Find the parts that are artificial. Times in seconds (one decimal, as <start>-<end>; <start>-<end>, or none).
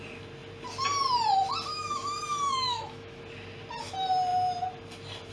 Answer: 1.7-3.2